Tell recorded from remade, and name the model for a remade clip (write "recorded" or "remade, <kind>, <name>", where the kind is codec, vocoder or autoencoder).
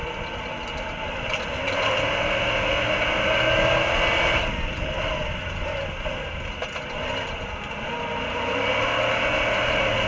recorded